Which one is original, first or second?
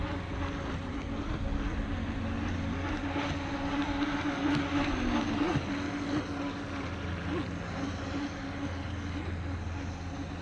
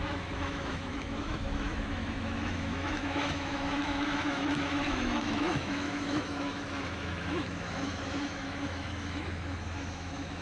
first